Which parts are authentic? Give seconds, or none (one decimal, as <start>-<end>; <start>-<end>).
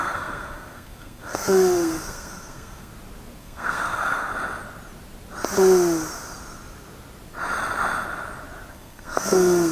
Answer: 2.9-3.4; 4.3-8.7